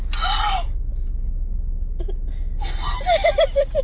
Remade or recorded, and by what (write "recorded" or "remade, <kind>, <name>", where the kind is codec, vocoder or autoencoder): recorded